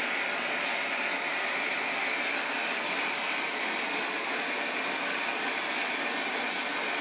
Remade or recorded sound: recorded